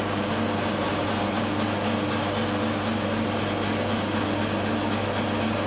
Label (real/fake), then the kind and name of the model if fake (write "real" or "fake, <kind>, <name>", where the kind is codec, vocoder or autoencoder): real